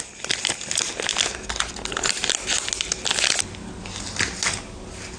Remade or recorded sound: recorded